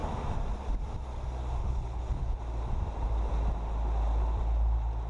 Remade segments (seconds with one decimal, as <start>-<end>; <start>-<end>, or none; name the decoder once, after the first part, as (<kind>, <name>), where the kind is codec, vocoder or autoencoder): 1.6-2.4 (codec, HILCodec)